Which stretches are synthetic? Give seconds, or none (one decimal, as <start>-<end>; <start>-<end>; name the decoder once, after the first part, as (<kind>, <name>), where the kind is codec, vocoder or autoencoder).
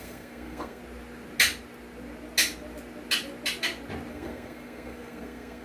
0.0-0.8 (codec, SNAC); 4.1-5.6